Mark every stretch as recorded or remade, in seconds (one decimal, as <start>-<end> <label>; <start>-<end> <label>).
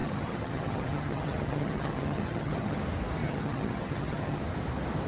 0.0-2.8 remade; 2.8-3.2 recorded; 3.2-4.4 remade; 4.4-5.1 recorded